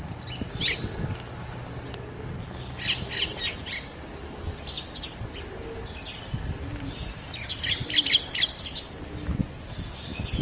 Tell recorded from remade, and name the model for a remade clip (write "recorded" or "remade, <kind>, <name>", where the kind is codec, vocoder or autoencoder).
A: recorded